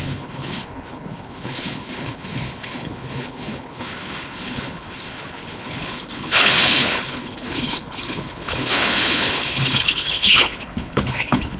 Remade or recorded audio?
remade